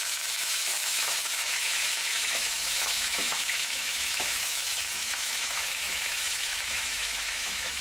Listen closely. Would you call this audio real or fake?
fake